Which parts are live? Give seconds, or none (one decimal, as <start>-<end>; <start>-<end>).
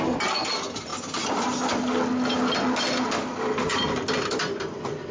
0.0-5.1